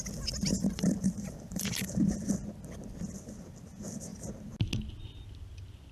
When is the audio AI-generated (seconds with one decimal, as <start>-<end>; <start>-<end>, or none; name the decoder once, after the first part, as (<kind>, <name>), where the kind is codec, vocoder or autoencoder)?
0.5-2.0 (vocoder, BigVGAN v2)